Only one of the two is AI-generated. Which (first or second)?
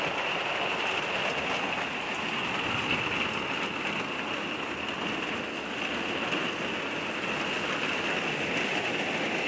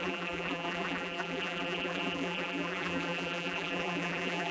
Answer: second